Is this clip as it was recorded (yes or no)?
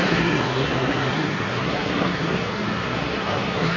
no